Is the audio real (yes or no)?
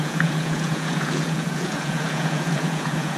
no